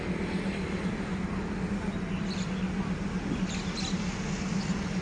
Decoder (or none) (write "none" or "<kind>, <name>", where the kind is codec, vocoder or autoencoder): none